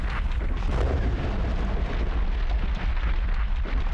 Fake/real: real